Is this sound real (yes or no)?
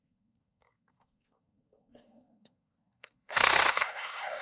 no